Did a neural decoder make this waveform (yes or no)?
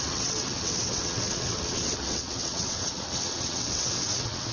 yes